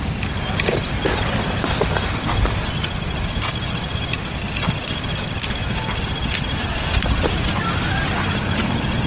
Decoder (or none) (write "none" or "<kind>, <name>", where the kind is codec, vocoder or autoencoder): none